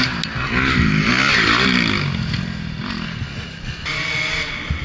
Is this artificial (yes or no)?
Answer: no